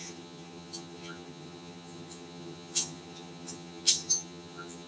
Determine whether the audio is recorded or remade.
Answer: remade